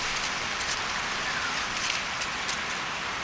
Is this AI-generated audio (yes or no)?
no